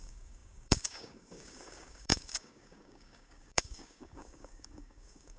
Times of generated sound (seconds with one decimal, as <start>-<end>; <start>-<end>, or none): 0.0-5.4